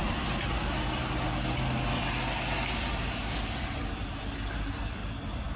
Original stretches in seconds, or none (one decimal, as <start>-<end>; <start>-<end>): 0.0-5.6